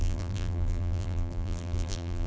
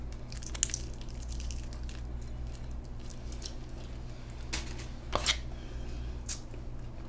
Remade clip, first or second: first